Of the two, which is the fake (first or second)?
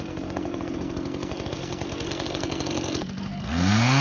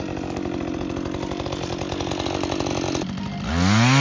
first